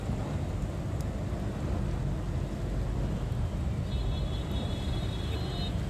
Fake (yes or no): no